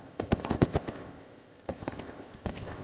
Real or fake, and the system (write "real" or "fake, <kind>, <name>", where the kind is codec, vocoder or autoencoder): fake, codec, ZipCodec